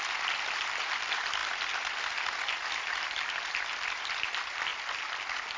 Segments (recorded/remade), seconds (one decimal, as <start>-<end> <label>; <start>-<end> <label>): 0.0-5.6 recorded